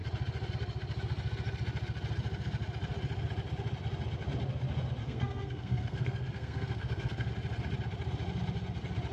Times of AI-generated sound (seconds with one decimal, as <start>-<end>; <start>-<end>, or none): 5.0-7.3